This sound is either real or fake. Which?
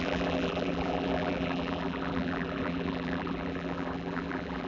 fake